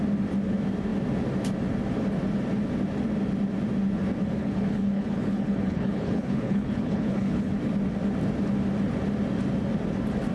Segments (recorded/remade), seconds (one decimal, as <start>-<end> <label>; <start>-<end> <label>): 0.0-4.4 recorded; 4.4-7.5 remade; 7.5-10.3 recorded